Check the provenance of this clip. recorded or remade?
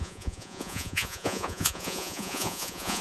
remade